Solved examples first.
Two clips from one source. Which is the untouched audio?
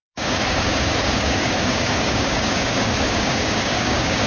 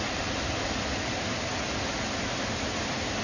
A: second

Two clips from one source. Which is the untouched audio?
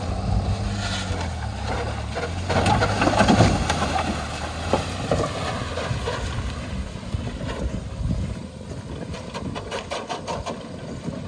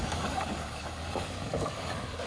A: first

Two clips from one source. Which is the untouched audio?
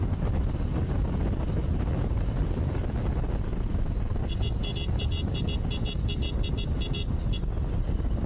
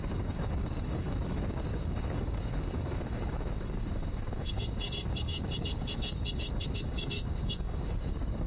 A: first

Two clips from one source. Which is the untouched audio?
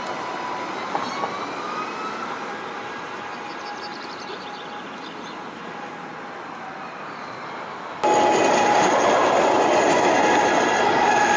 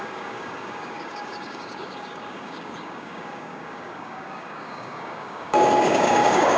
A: first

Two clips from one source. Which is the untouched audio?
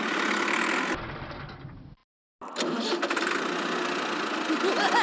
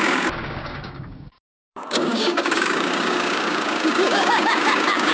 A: first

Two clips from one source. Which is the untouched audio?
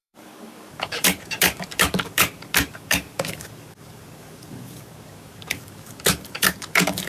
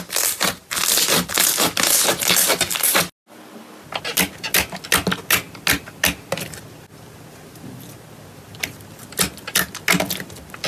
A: second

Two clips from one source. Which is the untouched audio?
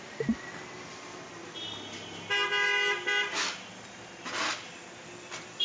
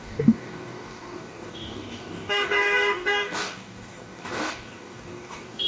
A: first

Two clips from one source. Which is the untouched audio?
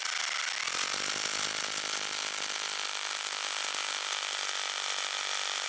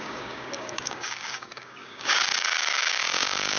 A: first